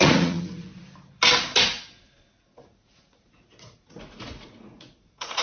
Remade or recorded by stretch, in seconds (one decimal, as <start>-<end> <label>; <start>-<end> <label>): 0.0-0.7 remade; 0.7-2.0 recorded; 2.0-5.4 remade